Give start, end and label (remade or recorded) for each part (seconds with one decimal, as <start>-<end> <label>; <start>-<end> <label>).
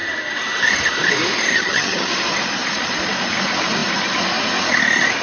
0.0-1.5 recorded; 1.5-2.1 remade; 2.1-5.2 recorded